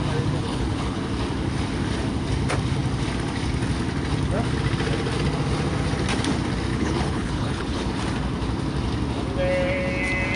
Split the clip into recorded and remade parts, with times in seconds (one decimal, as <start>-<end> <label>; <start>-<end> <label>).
0.0-0.4 recorded; 0.4-1.0 remade; 1.0-6.7 recorded; 6.7-7.9 remade; 7.9-10.4 recorded